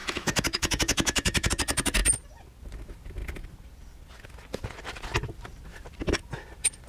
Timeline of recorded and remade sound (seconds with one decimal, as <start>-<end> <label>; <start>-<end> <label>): 0.0-1.5 remade; 1.5-6.9 recorded